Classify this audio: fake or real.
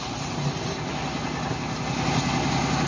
real